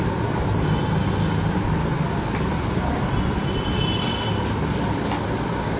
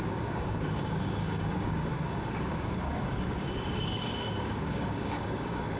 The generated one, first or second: second